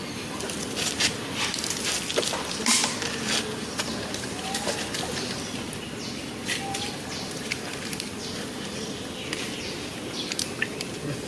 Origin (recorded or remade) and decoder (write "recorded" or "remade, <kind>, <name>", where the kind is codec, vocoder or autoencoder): remade, vocoder, BigVGAN v2